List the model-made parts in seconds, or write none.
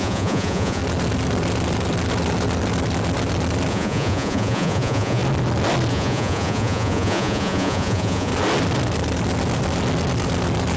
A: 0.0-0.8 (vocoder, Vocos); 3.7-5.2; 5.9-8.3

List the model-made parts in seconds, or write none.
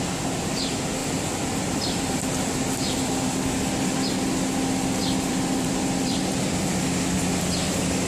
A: 1.0-4.1 (vocoder, BigVGAN v2); 5.0-6.8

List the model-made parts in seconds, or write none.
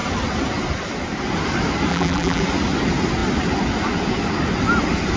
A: 1.9-2.4 (vocoder, BigVGAN v2)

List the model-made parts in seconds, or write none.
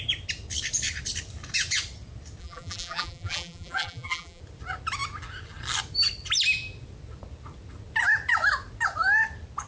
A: 2.4-4.4 (vocoder, BigVGAN v2)